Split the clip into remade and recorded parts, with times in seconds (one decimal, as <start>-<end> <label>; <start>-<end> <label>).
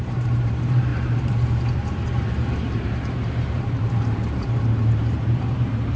0.0-6.0 remade